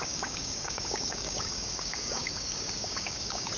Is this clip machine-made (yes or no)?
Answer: yes